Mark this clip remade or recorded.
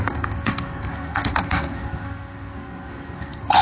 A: remade